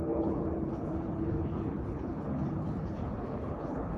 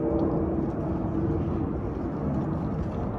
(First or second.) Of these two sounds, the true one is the second